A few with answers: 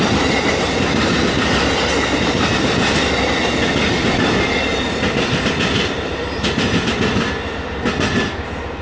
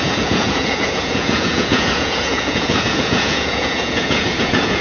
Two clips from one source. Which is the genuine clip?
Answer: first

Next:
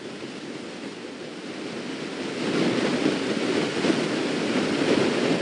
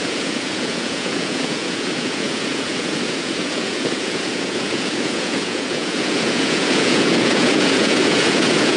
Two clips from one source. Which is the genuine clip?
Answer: first